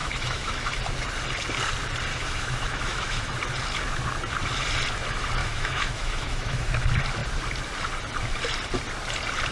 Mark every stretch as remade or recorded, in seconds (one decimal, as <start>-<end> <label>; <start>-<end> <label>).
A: 0.0-0.7 remade; 0.7-2.1 recorded; 2.1-3.3 remade; 3.3-5.4 recorded; 5.4-6.8 remade; 6.8-9.5 recorded